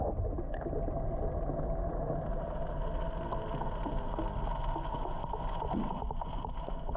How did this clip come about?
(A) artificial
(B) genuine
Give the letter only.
B